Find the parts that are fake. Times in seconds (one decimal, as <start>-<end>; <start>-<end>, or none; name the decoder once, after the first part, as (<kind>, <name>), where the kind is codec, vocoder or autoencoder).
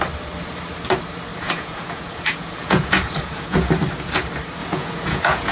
1.3-3.7 (vocoder, Vocos); 4.6-5.5